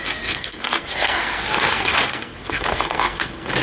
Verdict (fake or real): fake